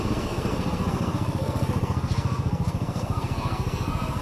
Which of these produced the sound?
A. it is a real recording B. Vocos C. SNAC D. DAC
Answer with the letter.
C